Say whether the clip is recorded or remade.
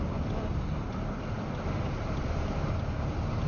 recorded